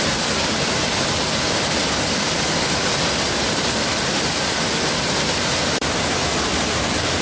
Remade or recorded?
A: recorded